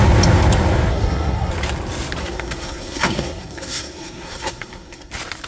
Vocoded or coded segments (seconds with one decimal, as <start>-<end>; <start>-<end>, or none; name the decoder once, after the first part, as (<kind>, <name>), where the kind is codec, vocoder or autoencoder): 0.9-1.5 (codec, SNAC); 2.2-5.1